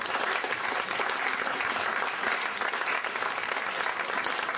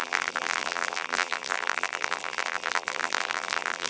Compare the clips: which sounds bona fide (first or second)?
first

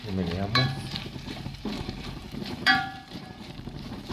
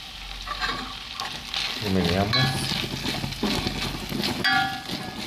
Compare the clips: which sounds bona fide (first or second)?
second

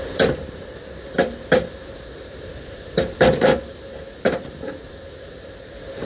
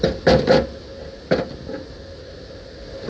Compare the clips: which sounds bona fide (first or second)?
second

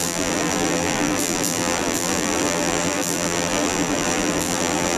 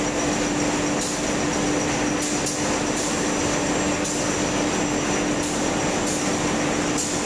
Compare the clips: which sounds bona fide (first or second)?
second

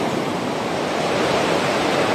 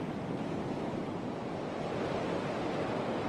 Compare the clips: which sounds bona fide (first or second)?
second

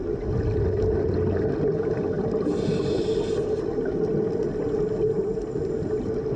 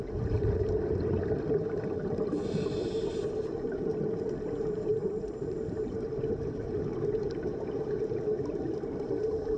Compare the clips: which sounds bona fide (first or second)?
first